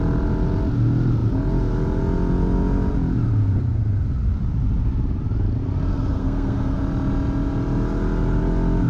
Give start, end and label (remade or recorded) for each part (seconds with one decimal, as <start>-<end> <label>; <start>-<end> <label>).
0.0-5.9 recorded; 5.9-6.8 remade; 6.8-8.9 recorded